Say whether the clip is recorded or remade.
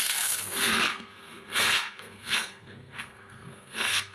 remade